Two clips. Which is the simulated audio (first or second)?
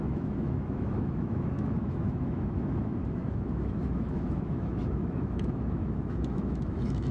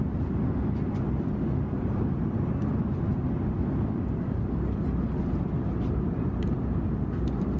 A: first